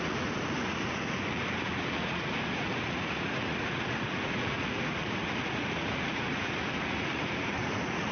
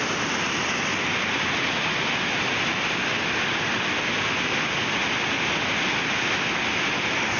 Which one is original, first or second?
second